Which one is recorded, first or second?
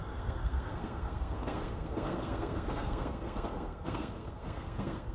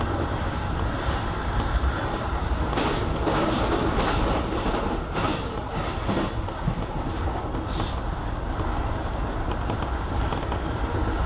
second